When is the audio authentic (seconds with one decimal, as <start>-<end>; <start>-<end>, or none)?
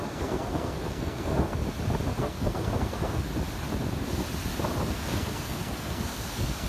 1.6-2.2; 3.3-4.9